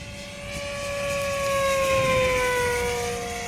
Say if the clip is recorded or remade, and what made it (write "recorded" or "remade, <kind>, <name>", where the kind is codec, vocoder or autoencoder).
recorded